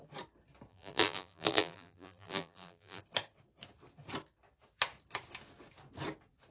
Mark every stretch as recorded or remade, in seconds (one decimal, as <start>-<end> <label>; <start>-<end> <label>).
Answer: 0.0-0.7 recorded; 0.7-3.0 remade; 3.0-6.5 recorded